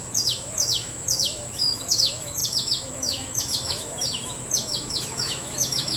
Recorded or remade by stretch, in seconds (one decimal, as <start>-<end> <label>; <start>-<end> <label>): 0.0-6.0 remade